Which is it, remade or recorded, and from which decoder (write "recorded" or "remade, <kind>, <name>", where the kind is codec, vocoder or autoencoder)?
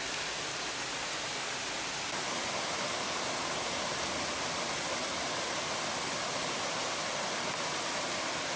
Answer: recorded